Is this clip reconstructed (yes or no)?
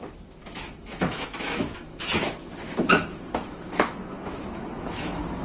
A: yes